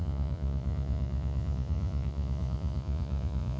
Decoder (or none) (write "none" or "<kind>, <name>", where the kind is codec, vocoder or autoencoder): vocoder, Vocos